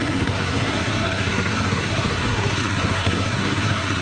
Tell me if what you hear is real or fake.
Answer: fake